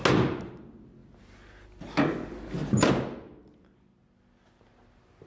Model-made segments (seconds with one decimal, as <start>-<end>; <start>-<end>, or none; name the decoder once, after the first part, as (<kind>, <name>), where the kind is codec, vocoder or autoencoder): none